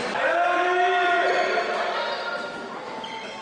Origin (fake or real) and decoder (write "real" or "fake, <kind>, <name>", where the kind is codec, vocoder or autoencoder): real